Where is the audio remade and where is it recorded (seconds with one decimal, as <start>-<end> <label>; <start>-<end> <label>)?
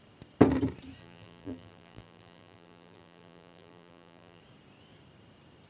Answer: 0.0-1.0 recorded; 1.0-4.4 remade; 4.4-5.7 recorded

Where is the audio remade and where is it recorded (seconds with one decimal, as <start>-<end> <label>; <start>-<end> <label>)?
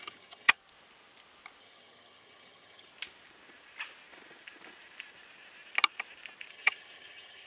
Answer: 0.0-0.6 remade; 0.6-1.6 recorded; 1.6-2.9 remade; 2.9-6.5 recorded; 6.5-7.5 remade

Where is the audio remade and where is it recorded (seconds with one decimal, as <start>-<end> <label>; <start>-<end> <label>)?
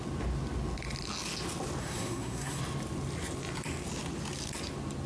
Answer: 0.0-1.8 recorded; 1.8-2.6 remade; 2.6-5.1 recorded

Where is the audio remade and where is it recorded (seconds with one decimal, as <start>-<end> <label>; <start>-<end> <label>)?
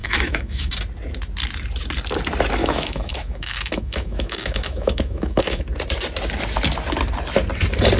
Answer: 0.0-0.7 remade; 0.7-2.6 recorded; 2.6-5.6 remade; 5.6-8.0 recorded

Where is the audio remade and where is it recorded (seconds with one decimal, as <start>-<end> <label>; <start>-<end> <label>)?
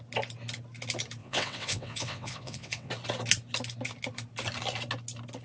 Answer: 0.0-1.2 recorded; 1.2-2.9 remade; 2.9-5.4 recorded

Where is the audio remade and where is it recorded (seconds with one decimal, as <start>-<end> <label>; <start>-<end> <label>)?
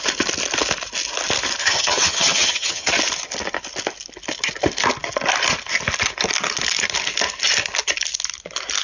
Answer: 0.0-1.6 recorded; 1.6-2.9 remade; 2.9-8.8 recorded